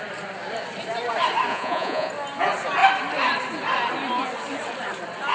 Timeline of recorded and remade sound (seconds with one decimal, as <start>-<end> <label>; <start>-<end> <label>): 0.0-1.5 recorded; 1.5-2.1 remade; 2.1-5.3 recorded